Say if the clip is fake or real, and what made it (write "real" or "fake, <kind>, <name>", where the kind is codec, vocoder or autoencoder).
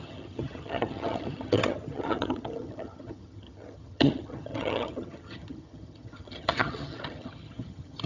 fake, vocoder, HiFi-GAN